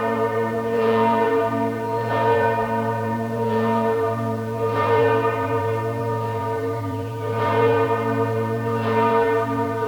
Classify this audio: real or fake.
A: fake